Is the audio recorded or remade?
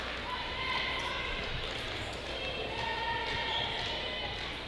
remade